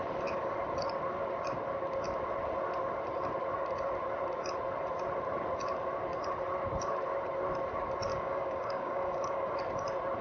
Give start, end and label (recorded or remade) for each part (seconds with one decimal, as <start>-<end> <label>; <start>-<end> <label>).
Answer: 0.0-8.1 recorded; 8.1-9.5 remade; 9.5-10.2 recorded